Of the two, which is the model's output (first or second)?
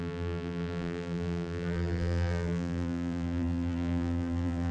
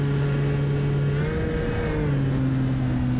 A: first